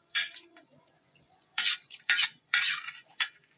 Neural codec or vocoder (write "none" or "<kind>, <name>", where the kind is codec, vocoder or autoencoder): vocoder, Vocos